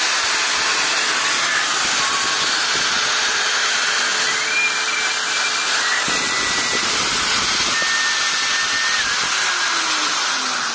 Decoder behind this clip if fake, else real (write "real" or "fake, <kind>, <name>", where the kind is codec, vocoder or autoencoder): real